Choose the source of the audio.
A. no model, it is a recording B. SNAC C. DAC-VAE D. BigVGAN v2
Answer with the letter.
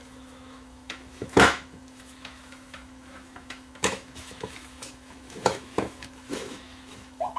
C